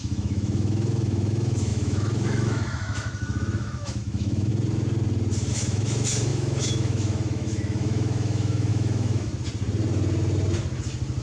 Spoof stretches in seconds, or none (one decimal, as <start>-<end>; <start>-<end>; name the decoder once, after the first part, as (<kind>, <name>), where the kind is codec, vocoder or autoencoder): 0.0-4.5 (autoencoder, DAC-VAE); 5.5-9.3